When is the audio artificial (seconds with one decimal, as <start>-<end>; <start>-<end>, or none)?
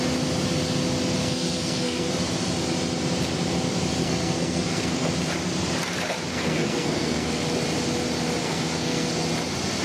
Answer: 1.2-2.1; 4.0-5.1; 6.3-7.4; 8.4-9.1